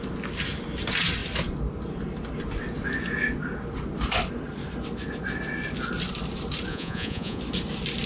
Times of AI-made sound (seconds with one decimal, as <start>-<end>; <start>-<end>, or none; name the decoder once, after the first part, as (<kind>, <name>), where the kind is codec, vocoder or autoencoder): 6.7-7.4 (vocoder, Vocos)